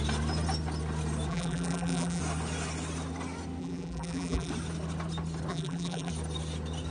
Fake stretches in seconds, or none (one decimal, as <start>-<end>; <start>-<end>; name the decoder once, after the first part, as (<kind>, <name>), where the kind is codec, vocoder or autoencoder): 1.3-2.2 (vocoder, BigVGAN v2); 3.6-4.5; 5.5-6.1